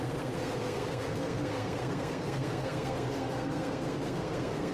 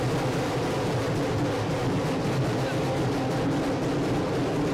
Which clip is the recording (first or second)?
second